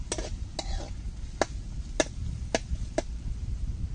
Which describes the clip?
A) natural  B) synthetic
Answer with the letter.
A